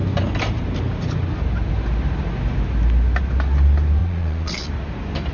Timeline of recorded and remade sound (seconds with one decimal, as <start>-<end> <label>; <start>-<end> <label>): 0.0-4.0 recorded; 4.0-4.7 remade; 4.7-5.3 recorded